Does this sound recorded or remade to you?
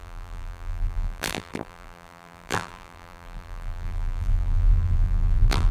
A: remade